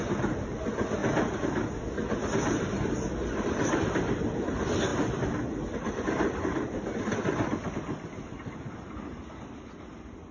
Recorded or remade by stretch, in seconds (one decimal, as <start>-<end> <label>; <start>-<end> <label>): 0.0-10.3 recorded